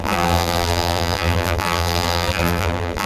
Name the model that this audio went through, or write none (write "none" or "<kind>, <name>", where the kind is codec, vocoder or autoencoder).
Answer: vocoder, BigVGAN v2